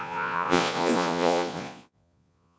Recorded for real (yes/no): no